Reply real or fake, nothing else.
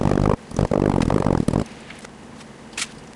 real